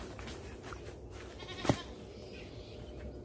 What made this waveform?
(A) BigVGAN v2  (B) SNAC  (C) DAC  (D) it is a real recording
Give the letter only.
D